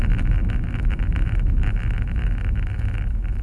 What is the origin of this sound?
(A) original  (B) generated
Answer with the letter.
B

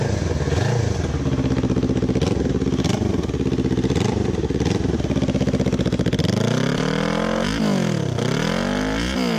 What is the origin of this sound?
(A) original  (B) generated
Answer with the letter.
A